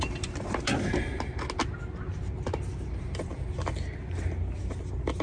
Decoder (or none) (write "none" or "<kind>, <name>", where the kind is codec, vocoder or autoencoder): none